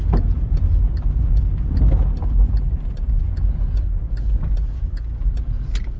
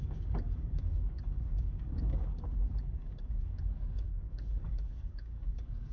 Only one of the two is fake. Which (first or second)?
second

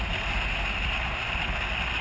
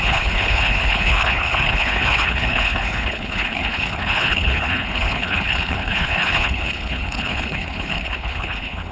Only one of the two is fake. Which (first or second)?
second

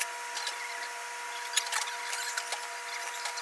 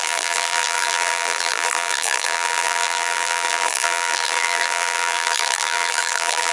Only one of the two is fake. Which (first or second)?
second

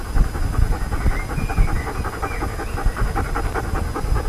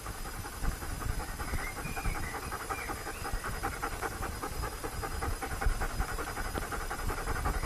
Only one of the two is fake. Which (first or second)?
second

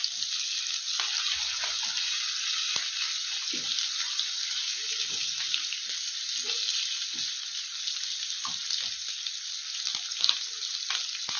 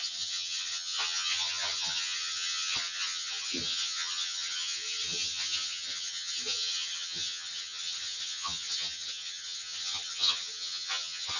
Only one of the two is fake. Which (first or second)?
second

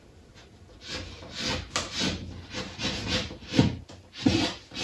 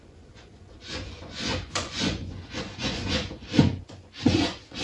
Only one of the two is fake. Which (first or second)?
second